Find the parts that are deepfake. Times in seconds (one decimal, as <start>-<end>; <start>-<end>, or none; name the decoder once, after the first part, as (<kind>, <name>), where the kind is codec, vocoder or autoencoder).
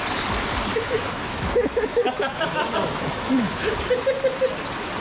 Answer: 0.7-3.7 (autoencoder, DAC-VAE)